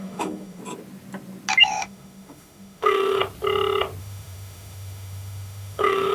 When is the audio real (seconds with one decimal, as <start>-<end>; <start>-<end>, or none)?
0.6-1.6; 3.2-4.0